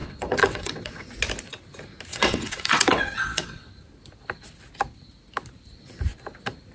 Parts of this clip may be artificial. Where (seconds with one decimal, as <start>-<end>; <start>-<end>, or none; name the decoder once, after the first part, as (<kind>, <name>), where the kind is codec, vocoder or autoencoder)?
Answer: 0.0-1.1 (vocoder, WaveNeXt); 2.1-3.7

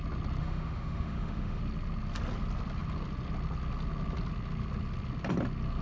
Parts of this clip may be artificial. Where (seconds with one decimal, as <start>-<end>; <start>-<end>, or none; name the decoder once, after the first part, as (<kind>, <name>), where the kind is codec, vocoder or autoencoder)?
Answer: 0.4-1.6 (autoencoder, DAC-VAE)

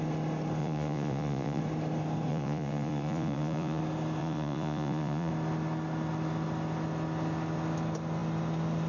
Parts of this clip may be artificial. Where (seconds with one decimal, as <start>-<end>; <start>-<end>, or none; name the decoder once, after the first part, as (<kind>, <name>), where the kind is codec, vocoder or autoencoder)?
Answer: 0.6-1.6 (vocoder, Vocos); 2.3-3.8; 4.2-5.3

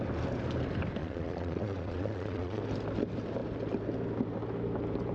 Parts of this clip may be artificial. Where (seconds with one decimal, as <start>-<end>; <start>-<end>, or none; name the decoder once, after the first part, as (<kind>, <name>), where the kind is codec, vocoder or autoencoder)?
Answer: 1.0-2.6 (vocoder, Vocos)